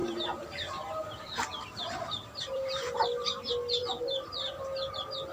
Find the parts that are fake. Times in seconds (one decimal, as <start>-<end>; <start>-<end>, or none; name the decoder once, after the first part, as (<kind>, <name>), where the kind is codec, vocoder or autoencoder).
0.0-3.2 (vocoder, BigVGAN v2); 3.8-4.5